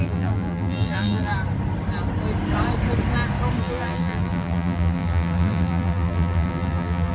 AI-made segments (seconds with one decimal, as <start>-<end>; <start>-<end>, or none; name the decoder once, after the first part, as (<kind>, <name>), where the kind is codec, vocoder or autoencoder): 0.0-1.3 (vocoder, BigVGAN v2); 3.6-7.1